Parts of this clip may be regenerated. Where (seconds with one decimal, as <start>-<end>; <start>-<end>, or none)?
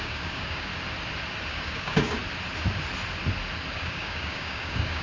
0.0-0.7; 1.5-2.2; 3.7-5.0